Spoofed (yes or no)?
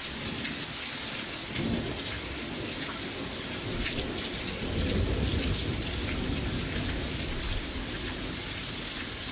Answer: no